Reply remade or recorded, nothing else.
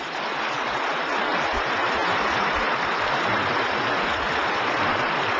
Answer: recorded